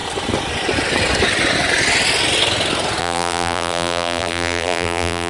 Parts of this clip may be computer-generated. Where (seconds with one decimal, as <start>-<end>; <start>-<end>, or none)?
3.0-5.3